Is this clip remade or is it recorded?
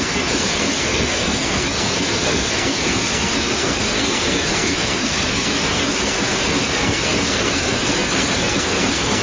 remade